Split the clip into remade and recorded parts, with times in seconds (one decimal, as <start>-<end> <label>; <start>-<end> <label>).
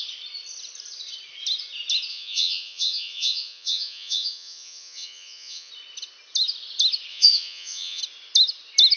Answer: 0.0-2.1 recorded; 2.1-5.7 remade; 5.7-7.1 recorded; 7.1-8.0 remade; 8.0-9.0 recorded